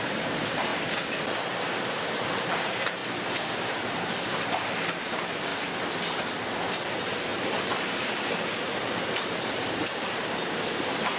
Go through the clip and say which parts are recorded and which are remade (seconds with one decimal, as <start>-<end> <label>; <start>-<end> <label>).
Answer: 0.0-0.7 remade; 0.7-1.9 recorded; 1.9-3.0 remade; 3.0-3.6 recorded; 3.6-5.5 remade; 5.5-6.8 recorded; 6.8-11.2 remade

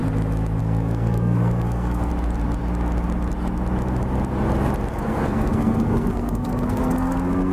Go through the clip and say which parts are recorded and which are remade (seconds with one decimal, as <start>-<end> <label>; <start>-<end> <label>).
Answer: 0.0-0.6 recorded; 0.6-2.1 remade; 2.1-4.9 recorded; 4.9-7.5 remade